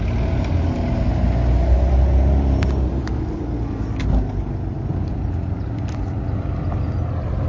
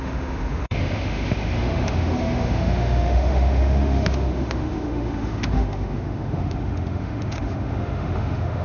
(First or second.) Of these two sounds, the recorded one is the first